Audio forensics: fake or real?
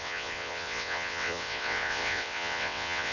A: fake